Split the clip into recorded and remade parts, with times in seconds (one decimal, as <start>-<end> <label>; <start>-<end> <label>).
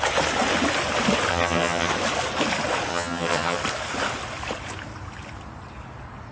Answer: 0.0-1.3 recorded; 1.3-1.9 remade; 1.9-2.9 recorded; 2.9-3.6 remade; 3.6-6.3 recorded